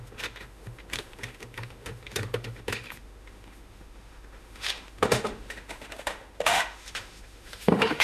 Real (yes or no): no